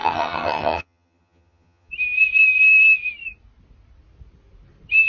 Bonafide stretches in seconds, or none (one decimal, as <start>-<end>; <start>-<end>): 1.9-5.1